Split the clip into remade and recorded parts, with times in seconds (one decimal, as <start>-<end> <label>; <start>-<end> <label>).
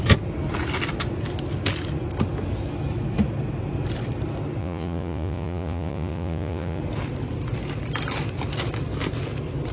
0.0-4.6 recorded; 4.6-6.8 remade; 6.8-9.7 recorded